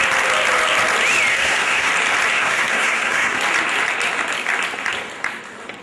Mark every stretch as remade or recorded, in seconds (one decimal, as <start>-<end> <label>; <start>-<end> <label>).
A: 0.0-1.3 recorded; 1.3-1.9 remade; 1.9-2.3 recorded; 2.3-3.4 remade; 3.4-5.8 recorded